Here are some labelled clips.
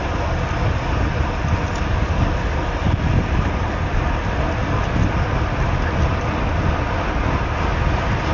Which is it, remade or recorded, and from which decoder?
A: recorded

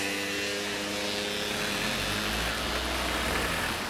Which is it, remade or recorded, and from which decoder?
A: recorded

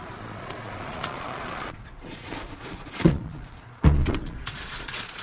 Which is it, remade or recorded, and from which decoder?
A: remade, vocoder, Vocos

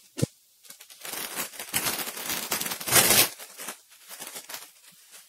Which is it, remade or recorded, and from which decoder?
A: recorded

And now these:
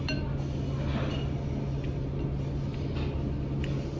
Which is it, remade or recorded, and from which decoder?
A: recorded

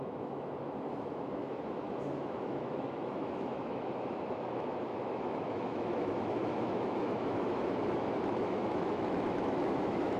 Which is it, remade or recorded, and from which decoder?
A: remade, autoencoder, DAC-VAE